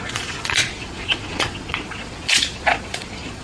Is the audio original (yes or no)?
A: no